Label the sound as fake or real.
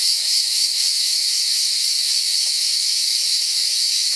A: fake